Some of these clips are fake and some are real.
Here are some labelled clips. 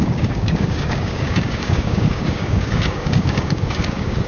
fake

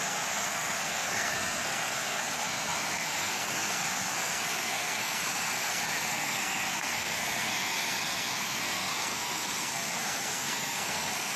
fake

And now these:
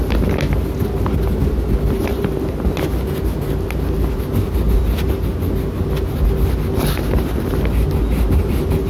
real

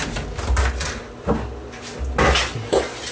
real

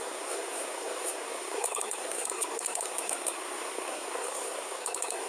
fake